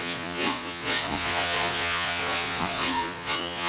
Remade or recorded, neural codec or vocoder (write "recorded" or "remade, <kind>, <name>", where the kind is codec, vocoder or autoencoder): remade, vocoder, Vocos